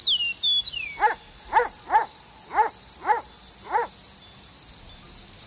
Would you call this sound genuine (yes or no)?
yes